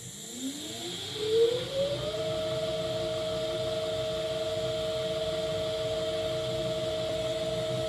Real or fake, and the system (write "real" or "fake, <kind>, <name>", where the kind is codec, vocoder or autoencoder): real